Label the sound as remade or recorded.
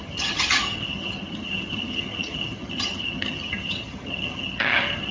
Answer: remade